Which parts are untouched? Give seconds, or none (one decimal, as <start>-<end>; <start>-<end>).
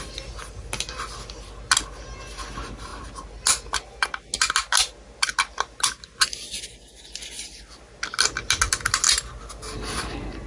0.0-10.5